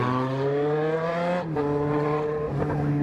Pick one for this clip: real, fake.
real